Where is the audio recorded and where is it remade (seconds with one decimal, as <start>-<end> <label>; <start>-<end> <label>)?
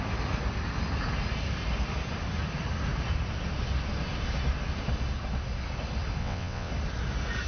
0.0-6.2 recorded; 6.2-6.7 remade; 6.7-7.5 recorded